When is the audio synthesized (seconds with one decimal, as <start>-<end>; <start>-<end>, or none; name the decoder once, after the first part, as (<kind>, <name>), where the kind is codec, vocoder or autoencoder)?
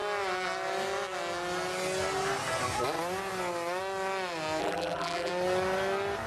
4.6-5.3 (vocoder, BigVGAN v2)